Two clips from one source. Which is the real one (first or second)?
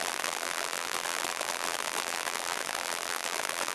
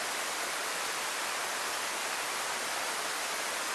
second